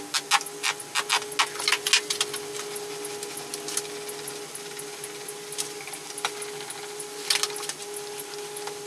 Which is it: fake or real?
real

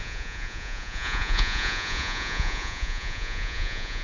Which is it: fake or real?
fake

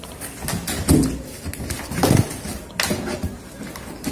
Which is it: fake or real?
real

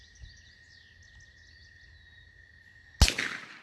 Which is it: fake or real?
real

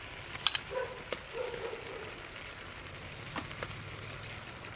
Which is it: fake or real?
real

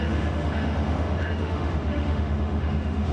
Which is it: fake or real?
fake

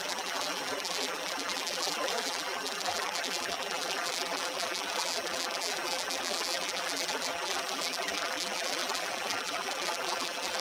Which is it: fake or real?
fake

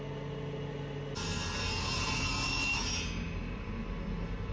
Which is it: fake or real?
real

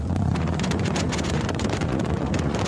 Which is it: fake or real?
fake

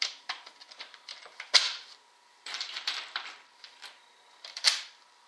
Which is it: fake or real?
fake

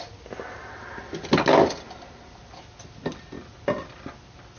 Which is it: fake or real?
real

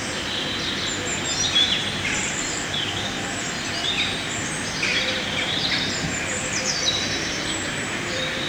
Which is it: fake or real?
fake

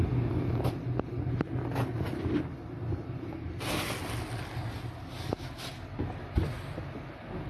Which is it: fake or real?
real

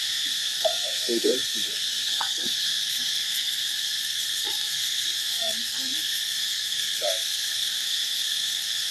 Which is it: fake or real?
fake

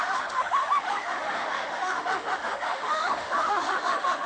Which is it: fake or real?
fake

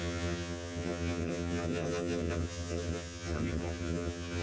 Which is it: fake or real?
fake